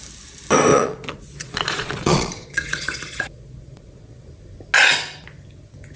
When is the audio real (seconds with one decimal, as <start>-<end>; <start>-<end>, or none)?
0.0-0.7; 4.3-6.0